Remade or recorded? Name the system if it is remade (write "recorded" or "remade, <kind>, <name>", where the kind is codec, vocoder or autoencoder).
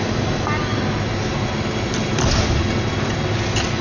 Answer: recorded